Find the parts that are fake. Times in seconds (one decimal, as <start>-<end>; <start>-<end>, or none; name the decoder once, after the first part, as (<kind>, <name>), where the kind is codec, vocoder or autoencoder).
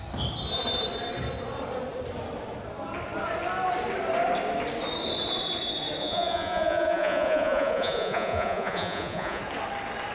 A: 6.0-9.4 (vocoder, Vocos)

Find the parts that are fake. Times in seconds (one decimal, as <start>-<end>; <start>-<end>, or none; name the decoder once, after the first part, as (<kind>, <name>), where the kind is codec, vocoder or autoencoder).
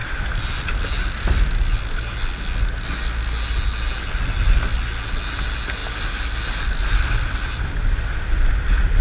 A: 5.8-8.0 (vocoder, BigVGAN v2)